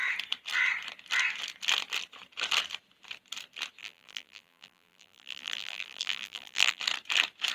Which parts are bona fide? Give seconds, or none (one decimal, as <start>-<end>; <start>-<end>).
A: 0.0-3.8; 6.8-7.5